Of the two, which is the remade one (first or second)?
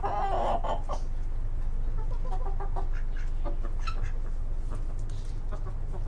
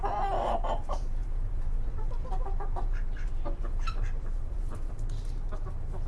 second